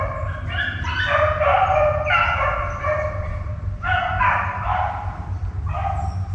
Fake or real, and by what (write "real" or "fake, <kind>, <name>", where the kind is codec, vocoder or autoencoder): real